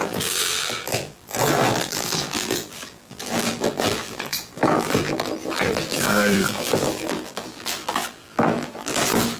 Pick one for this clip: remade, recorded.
remade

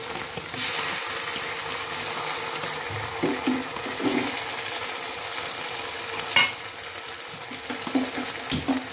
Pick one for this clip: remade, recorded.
recorded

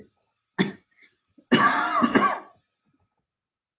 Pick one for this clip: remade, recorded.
recorded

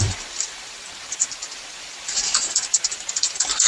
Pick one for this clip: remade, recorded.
remade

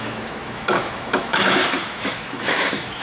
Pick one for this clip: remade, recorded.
remade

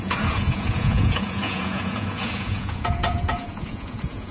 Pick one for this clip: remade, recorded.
remade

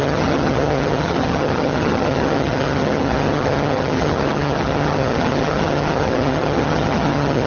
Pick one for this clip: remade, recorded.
remade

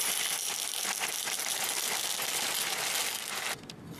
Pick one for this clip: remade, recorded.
recorded